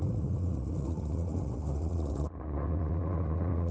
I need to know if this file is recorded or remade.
remade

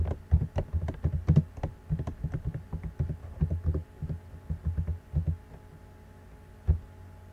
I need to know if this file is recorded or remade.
recorded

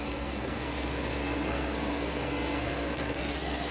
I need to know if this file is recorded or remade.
remade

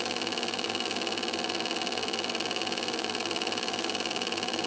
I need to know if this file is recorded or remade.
remade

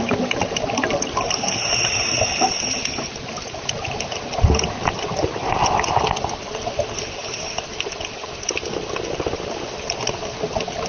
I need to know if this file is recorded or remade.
recorded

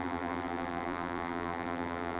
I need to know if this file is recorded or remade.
remade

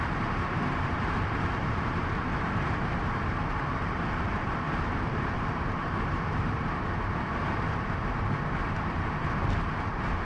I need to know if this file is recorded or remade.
remade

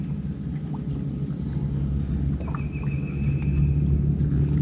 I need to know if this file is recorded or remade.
recorded